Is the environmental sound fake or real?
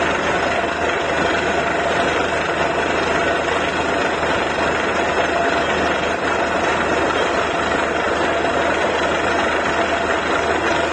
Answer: real